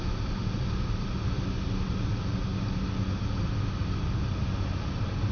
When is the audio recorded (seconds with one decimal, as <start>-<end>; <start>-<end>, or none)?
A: 0.0-5.3

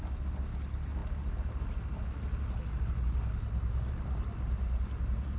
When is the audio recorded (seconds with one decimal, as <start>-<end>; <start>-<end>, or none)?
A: 0.0-5.4